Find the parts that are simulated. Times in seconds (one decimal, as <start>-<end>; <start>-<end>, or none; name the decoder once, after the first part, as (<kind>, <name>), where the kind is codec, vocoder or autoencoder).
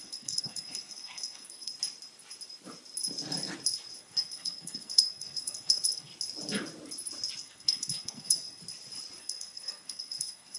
0.0-1.7 (codec, SNAC); 4.0-6.1; 7.4-8.6; 9.2-10.6